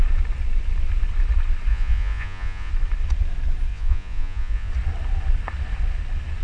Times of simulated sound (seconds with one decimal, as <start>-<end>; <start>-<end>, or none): 1.7-2.7; 3.7-4.7